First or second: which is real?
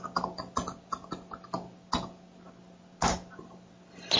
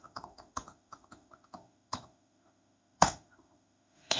first